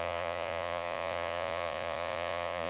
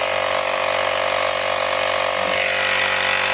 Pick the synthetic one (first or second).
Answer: first